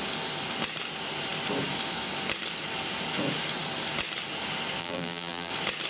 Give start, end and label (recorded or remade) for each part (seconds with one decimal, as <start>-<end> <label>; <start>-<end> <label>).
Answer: 0.0-4.8 recorded; 4.8-5.5 remade; 5.5-5.9 recorded